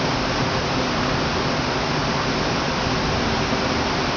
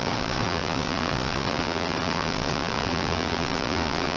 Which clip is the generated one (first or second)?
second